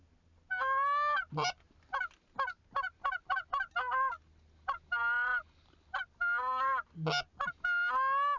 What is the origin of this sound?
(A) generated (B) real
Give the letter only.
B